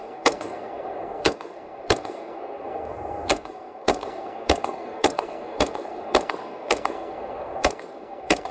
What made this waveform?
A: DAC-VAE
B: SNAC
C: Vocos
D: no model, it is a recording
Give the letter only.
B